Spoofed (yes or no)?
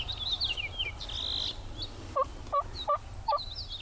no